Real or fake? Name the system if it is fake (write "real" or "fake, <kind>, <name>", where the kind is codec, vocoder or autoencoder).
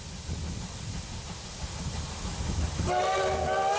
real